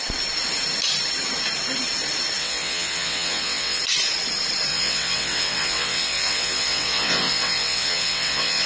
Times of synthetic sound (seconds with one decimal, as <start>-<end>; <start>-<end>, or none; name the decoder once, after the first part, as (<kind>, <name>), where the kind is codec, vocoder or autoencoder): 2.4-3.8 (vocoder, WaveNeXt); 4.7-8.7